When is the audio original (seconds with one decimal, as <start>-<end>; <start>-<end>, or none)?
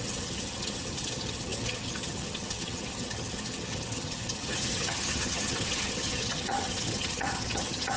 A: none